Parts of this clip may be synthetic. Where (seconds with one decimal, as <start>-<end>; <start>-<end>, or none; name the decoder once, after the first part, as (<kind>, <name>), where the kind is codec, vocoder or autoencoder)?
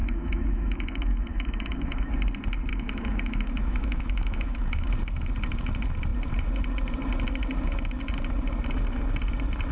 0.0-2.1 (autoencoder, DAC-VAE); 2.7-4.9